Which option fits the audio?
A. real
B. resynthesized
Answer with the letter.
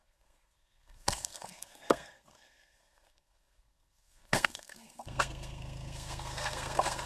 B